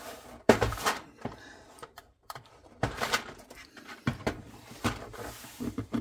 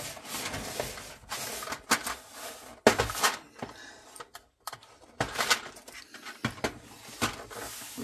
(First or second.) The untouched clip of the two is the second